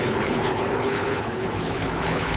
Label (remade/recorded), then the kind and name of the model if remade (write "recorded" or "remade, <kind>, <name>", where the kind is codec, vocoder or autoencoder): remade, codec, HILCodec